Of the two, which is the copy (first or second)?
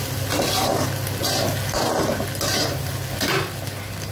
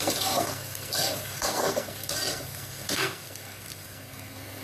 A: second